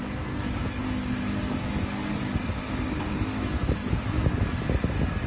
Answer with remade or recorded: recorded